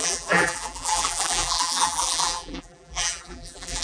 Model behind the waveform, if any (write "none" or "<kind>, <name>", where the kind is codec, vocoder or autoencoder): vocoder, BigVGAN v2